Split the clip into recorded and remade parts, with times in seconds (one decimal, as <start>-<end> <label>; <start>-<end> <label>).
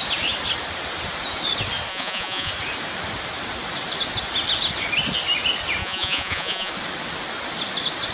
0.0-1.9 recorded; 1.9-2.5 remade; 2.5-5.8 recorded; 5.8-6.7 remade; 6.7-8.1 recorded